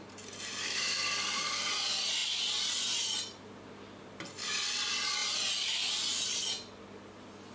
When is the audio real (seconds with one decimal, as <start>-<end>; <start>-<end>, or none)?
0.0-0.6; 1.7-7.5